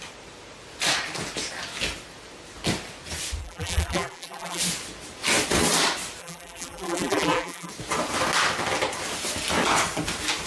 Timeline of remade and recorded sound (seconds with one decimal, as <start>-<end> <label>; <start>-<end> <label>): 0.0-3.4 recorded; 3.4-4.6 remade; 4.6-6.2 recorded; 6.2-7.7 remade; 7.7-10.5 recorded